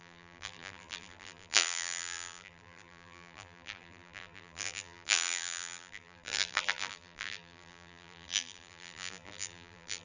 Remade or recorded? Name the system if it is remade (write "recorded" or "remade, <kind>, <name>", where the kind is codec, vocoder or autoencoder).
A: remade, vocoder, BigVGAN v2